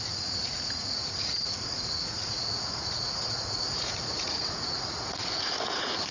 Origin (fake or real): fake